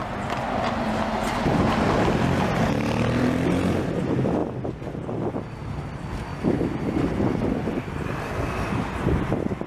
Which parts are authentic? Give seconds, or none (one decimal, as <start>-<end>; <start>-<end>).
0.0-9.7